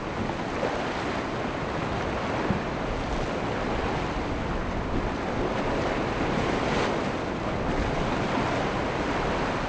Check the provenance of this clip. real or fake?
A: real